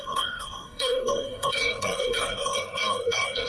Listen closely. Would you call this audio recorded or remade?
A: remade